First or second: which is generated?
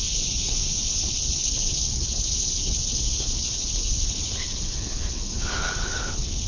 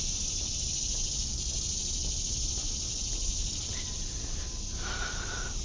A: first